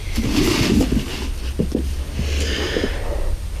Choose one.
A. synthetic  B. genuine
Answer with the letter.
B